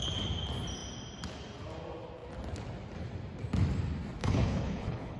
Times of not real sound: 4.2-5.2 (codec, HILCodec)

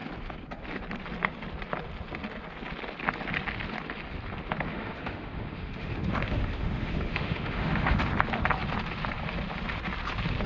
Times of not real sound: 4.7-8.0 (autoencoder, DAC-VAE)

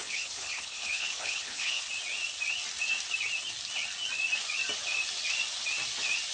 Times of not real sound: 0.0-1.8 (codec, HILCodec)

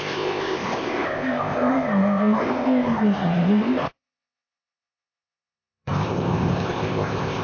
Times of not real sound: 0.0-7.4 (codec, ZipCodec)

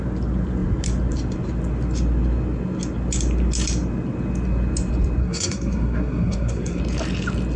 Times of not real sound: 5.2-6.8 (codec, SNAC)

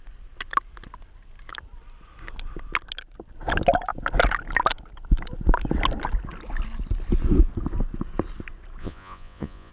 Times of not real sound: 8.8-9.7 (vocoder, Vocos)

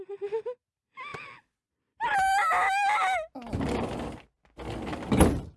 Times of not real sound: none